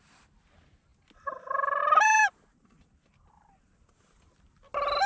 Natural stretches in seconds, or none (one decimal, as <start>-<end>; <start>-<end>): 0.0-5.1